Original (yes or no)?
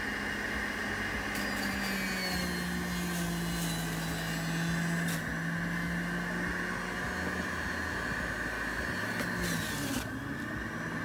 yes